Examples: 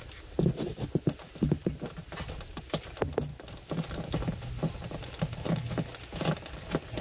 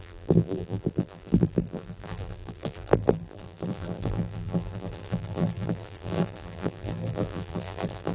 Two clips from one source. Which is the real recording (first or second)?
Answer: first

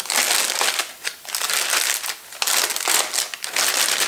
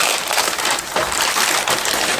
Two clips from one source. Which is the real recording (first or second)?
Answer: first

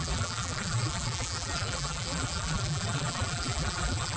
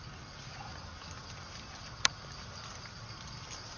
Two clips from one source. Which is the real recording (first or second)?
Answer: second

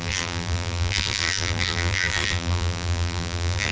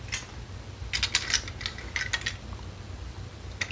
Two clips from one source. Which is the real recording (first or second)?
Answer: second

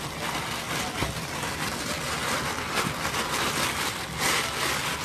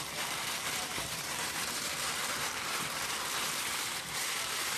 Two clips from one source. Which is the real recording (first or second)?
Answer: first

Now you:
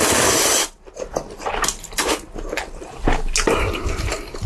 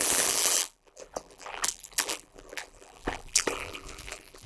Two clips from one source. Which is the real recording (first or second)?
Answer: first